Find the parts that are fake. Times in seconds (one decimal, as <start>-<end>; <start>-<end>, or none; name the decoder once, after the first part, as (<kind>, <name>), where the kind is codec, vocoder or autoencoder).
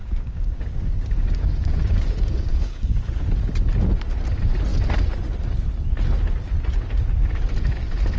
0.0-3.1 (codec, DAC)